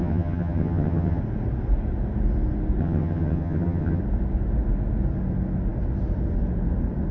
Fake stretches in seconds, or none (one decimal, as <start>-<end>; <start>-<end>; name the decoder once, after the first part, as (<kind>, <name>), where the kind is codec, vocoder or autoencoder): 0.0-1.2 (vocoder, HiFi-GAN); 2.8-4.0